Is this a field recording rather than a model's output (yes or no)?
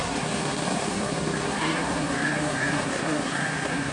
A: no